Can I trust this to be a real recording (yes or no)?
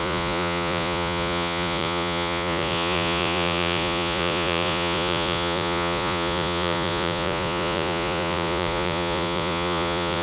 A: no